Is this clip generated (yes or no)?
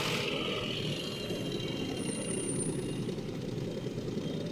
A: no